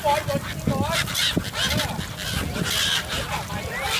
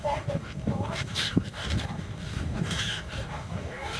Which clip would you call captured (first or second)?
first